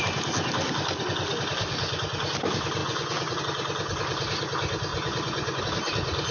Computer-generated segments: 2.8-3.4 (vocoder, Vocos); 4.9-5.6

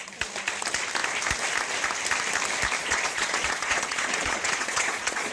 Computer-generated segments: 2.8-5.3 (vocoder, Vocos)

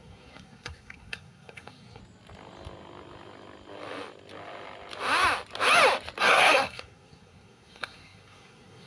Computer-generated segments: 0.0-2.0 (codec, SNAC); 6.2-8.9